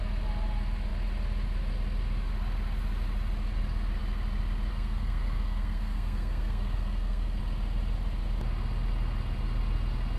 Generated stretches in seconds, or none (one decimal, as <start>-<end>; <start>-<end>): 4.7-7.4